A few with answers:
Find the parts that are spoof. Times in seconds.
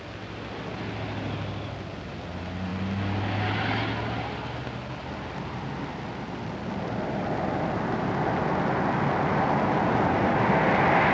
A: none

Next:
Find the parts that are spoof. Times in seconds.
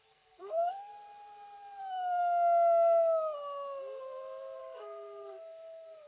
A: 0.0-0.9 (codec, SNAC); 4.6-6.1